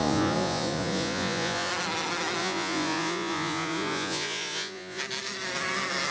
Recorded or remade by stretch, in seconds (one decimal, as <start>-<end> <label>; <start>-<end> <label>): 0.0-1.7 remade; 1.7-2.4 recorded; 2.4-5.0 remade; 5.0-6.1 recorded